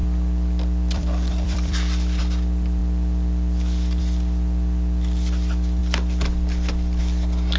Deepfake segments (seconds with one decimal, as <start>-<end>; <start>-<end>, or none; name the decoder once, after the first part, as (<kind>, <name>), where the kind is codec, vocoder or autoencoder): 0.0-2.8 (vocoder, BigVGAN v2); 4.0-5.8; 7.0-7.6